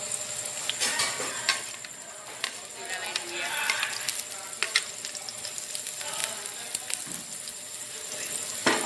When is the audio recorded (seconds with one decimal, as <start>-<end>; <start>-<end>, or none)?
0.0-8.9